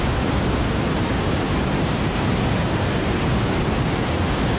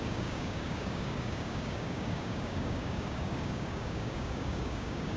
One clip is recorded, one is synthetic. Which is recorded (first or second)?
first